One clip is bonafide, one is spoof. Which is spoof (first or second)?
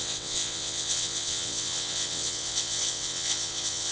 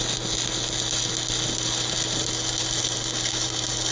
first